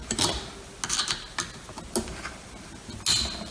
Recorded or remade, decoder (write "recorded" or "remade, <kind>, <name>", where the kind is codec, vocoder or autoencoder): recorded